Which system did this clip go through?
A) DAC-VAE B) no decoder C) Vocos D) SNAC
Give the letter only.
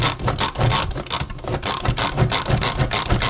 B